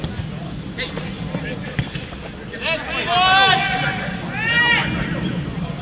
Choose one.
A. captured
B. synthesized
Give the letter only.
A